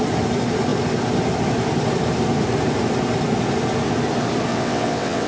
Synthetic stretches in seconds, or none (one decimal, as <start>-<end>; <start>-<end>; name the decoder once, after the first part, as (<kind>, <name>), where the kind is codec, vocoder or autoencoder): 4.5-5.3 (vocoder, WaveNeXt)